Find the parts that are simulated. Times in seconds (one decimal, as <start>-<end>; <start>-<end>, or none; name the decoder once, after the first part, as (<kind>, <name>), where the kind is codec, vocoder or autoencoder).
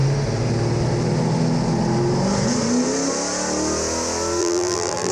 4.4-5.1 (vocoder, BigVGAN v2)